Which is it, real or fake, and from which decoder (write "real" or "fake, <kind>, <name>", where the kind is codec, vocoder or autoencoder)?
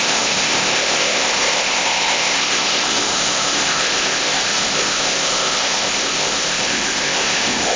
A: fake, codec, ZipCodec